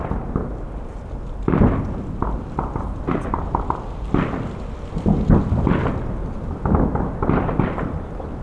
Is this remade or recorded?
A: recorded